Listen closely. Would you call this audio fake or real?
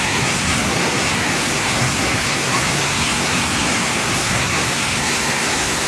fake